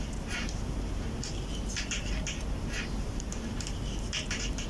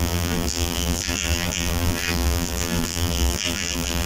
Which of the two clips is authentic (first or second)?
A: first